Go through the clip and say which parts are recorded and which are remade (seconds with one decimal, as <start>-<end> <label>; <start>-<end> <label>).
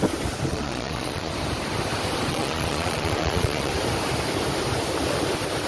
0.0-0.5 recorded; 0.5-1.3 remade; 1.3-2.3 recorded; 2.3-3.7 remade; 3.7-5.7 recorded